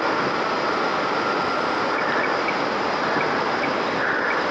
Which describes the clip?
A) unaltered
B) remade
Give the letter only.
A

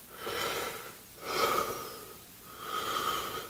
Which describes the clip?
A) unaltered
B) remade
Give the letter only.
A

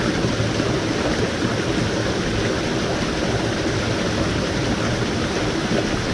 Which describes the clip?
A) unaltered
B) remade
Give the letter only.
A